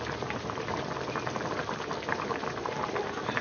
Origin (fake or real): fake